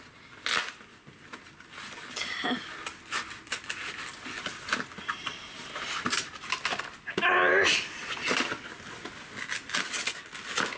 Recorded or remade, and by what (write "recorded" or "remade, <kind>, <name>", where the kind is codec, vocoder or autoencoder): recorded